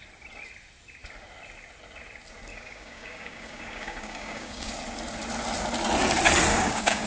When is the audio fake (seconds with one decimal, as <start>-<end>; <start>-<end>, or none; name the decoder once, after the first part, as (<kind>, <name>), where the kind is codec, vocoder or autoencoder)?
2.5-4.7 (codec, DAC); 6.5-7.1